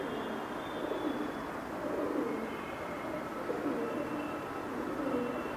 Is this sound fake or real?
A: real